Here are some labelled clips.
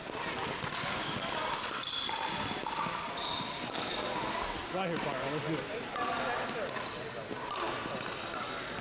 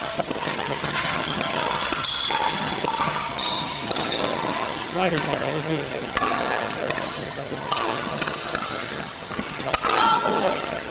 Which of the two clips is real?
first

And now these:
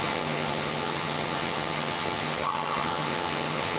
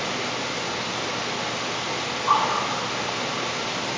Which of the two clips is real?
second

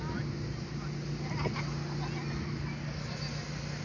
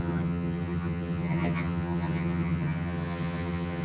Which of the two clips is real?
first